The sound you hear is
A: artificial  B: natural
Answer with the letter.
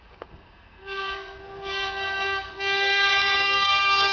A